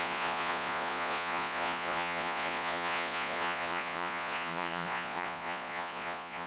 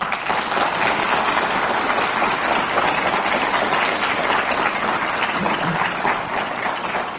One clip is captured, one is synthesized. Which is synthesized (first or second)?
first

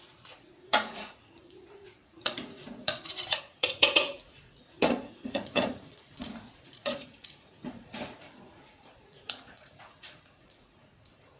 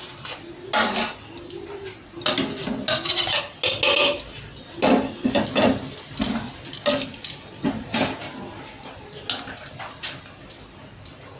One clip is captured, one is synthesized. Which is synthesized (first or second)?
first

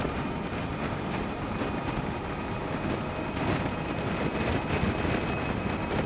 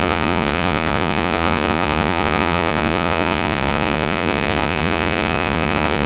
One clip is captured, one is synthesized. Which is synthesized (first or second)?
second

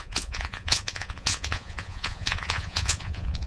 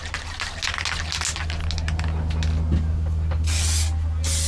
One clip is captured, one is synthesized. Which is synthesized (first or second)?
first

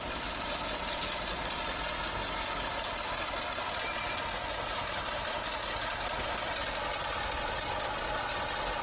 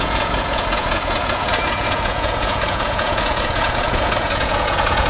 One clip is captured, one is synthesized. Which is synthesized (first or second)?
second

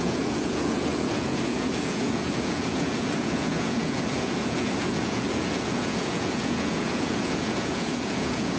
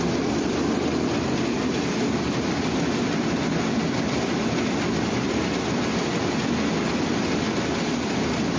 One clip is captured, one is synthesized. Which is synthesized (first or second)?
first